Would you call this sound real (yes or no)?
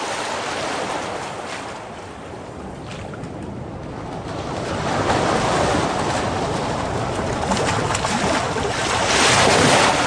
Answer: yes